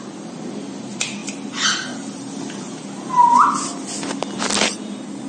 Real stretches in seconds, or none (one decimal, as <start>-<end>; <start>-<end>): 0.0-5.3